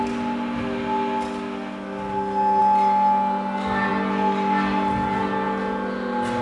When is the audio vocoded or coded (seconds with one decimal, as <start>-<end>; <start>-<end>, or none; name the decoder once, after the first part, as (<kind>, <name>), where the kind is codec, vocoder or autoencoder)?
none